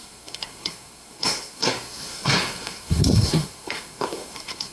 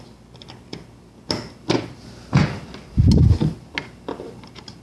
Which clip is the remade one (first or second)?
first